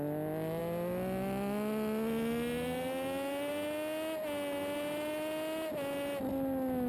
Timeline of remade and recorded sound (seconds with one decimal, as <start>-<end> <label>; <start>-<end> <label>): 0.0-6.9 recorded